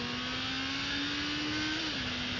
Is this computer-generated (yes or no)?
no